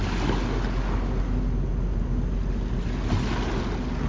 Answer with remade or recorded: recorded